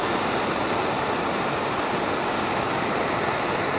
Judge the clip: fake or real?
real